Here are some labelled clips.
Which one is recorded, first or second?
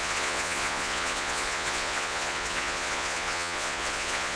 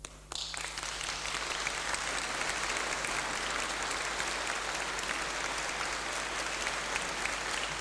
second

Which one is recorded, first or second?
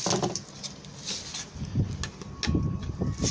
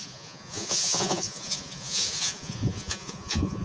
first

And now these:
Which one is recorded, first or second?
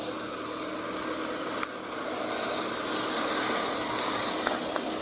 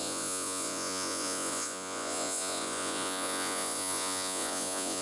first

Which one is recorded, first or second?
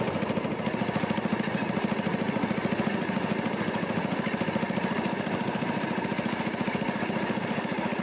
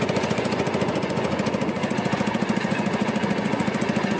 first